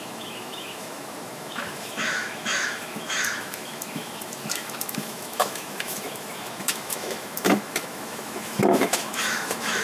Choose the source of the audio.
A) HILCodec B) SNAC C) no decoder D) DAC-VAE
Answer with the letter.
D